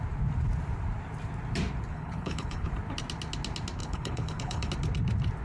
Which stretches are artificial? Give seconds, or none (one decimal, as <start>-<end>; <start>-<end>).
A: 1.9-2.7; 3.8-4.7